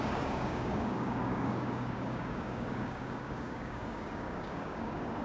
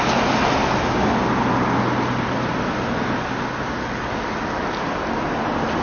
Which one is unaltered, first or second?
second